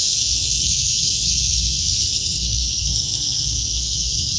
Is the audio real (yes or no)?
no